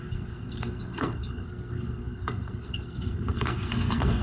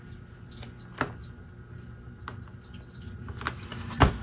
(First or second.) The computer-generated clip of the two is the first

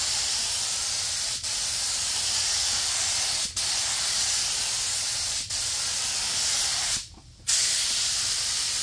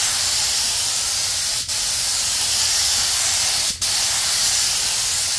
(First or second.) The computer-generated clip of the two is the first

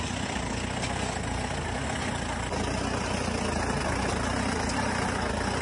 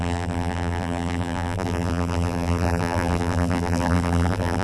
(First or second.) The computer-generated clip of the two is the second